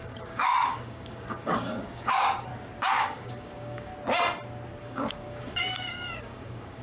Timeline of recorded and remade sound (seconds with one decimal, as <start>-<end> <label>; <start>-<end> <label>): 0.0-2.5 remade; 2.5-3.0 recorded; 3.0-3.9 remade; 3.9-4.8 recorded; 4.8-6.8 remade